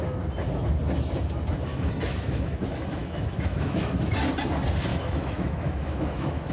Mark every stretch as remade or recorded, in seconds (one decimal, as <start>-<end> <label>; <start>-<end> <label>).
0.0-1.7 recorded; 1.7-2.6 remade; 2.6-3.0 recorded; 3.0-4.1 remade; 4.1-4.9 recorded; 4.9-6.5 remade